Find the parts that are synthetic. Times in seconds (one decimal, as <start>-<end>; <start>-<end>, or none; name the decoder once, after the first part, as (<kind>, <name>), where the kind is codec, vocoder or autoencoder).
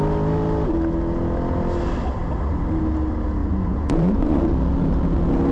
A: 3.4-4.5 (vocoder, Vocos)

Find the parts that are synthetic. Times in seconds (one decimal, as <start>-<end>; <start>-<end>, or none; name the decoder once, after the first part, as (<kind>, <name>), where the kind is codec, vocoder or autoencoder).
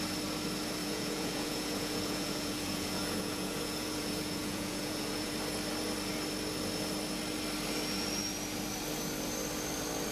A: 0.8-5.3 (vocoder, Vocos)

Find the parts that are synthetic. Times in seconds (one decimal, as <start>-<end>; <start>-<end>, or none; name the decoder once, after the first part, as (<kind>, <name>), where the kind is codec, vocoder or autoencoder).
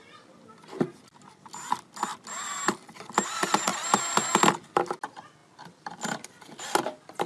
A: none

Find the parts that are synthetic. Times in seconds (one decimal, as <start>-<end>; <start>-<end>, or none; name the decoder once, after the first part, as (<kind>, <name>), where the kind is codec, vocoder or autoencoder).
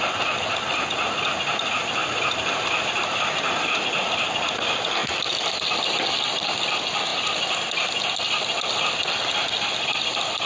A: none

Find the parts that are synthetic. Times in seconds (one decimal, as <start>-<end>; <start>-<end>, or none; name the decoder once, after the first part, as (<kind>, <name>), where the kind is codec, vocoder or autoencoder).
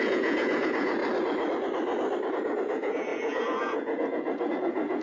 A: 0.0-1.0 (vocoder, Vocos); 2.3-5.0